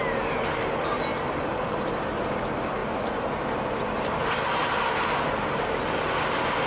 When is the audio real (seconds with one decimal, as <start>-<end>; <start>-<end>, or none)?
0.0-1.1; 2.3-2.8; 6.1-6.7